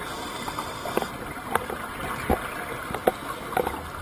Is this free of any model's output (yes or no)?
yes